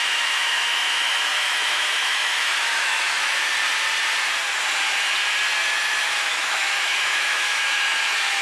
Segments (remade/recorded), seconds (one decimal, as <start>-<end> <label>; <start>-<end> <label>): 0.0-3.5 remade; 3.5-5.7 recorded; 5.7-8.4 remade